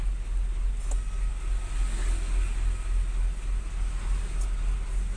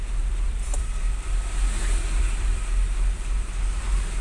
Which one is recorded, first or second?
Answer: first